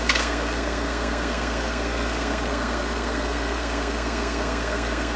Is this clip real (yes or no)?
no